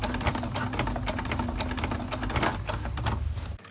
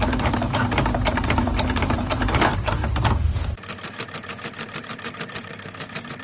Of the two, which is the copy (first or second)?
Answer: second